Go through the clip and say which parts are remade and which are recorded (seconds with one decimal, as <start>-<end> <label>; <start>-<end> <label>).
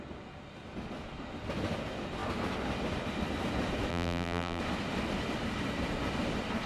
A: 0.0-3.9 recorded; 3.9-4.6 remade; 4.6-6.7 recorded